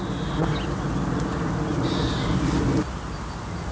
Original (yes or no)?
yes